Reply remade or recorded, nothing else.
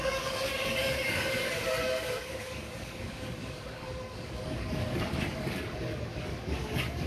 remade